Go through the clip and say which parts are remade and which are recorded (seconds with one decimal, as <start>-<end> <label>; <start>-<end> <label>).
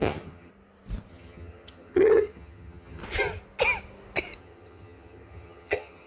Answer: 0.0-0.5 remade; 0.5-1.1 recorded; 1.1-3.0 remade; 3.0-4.4 recorded; 4.4-6.1 remade